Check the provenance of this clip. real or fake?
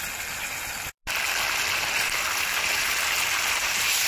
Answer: real